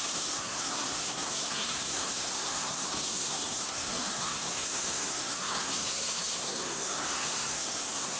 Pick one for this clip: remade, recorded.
remade